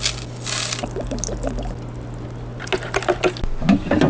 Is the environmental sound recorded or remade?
recorded